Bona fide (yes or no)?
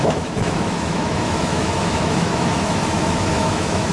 no